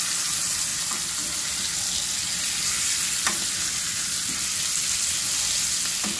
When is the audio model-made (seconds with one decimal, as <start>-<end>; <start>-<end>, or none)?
none